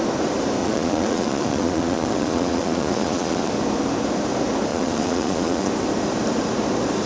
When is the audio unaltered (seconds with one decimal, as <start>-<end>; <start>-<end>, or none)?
0.0-0.6; 3.5-4.7; 5.7-7.1